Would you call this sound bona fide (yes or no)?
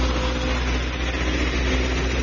yes